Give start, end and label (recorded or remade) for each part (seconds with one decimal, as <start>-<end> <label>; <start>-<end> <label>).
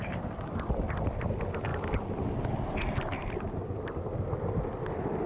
0.0-5.3 recorded